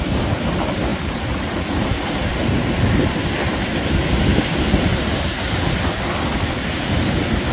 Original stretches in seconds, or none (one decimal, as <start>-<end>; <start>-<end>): 0.0-7.5